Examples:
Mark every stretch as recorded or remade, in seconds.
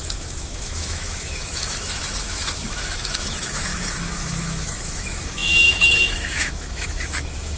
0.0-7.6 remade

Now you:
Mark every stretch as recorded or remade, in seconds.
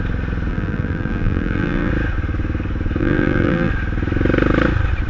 0.0-0.5 recorded; 0.5-1.9 remade; 1.9-3.0 recorded; 3.0-3.7 remade; 3.7-5.1 recorded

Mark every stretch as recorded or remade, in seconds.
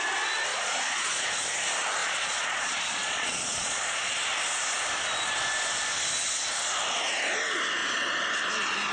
0.0-0.5 recorded; 0.5-1.2 remade; 1.2-2.0 recorded; 2.0-4.2 remade; 4.2-8.9 recorded